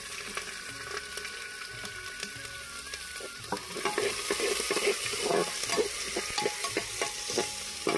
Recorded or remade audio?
recorded